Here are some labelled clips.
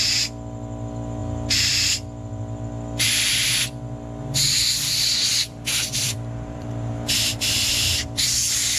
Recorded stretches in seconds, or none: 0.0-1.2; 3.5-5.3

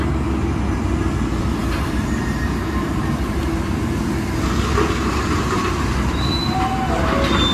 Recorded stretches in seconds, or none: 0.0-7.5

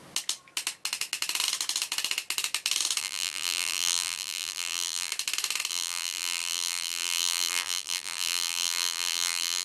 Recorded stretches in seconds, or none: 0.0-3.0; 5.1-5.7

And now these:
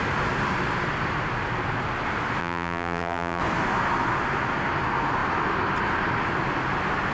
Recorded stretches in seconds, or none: 0.0-2.4; 3.4-7.1

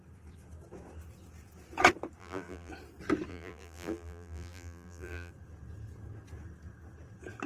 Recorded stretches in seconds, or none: 0.0-2.2; 2.7-3.3; 5.3-7.5

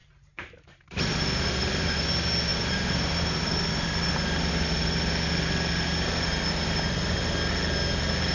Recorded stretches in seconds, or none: 1.9-2.5; 3.7-8.3